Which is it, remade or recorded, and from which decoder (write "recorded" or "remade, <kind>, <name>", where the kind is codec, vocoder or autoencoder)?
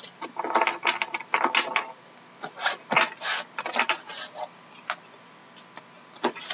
recorded